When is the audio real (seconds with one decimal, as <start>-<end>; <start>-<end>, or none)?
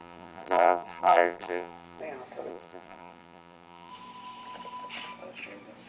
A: 2.0-2.5; 3.9-5.9